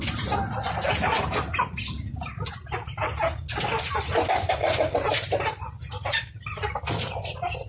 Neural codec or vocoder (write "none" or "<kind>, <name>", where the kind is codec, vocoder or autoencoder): none